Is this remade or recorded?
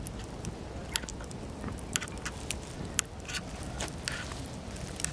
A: recorded